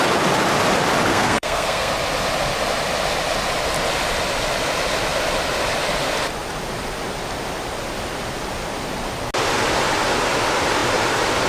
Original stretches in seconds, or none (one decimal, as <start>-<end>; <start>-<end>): 0.0-1.1; 1.9-11.5